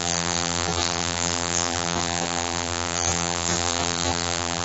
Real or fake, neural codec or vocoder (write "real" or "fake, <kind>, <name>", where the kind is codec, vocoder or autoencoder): fake, vocoder, BigVGAN v2